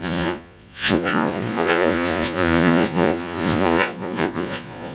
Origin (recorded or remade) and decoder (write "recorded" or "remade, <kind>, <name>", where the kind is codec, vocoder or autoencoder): remade, vocoder, Vocos